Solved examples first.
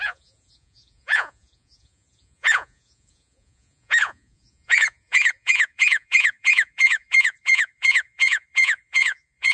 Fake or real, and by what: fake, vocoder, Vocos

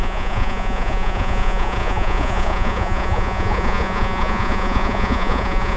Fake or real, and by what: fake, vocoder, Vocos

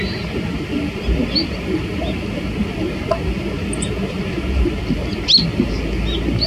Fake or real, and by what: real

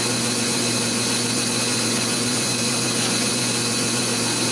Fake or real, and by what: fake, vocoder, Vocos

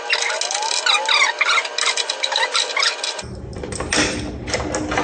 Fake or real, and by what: real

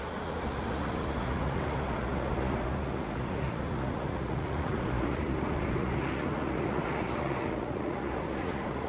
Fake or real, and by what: fake, vocoder, Vocos